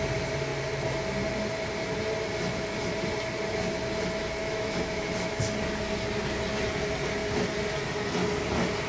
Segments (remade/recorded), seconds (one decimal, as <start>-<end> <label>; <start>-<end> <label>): 0.0-4.4 recorded; 4.4-5.1 remade; 5.1-8.9 recorded